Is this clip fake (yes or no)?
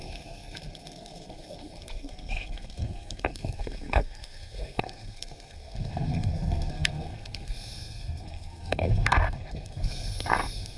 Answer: yes